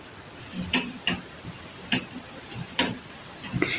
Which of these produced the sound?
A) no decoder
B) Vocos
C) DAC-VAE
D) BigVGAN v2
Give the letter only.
A